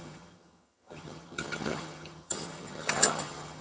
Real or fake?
fake